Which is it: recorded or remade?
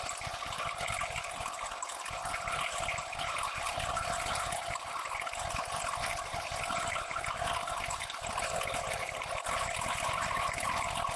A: recorded